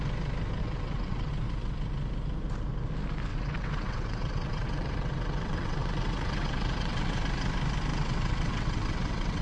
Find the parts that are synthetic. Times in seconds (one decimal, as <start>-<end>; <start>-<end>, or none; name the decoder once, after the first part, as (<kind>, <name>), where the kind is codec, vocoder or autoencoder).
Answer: 0.6-1.3 (vocoder, WaveNeXt); 3.3-7.2; 7.9-9.4